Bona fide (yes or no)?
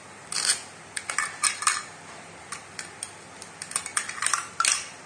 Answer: yes